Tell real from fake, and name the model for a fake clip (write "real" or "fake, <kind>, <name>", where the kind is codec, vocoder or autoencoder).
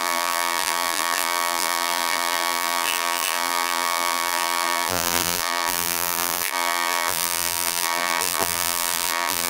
fake, vocoder, BigVGAN v2